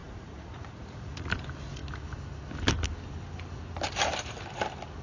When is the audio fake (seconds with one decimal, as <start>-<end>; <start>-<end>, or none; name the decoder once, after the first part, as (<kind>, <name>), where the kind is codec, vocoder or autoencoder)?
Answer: 0.0-1.3 (vocoder, Vocos)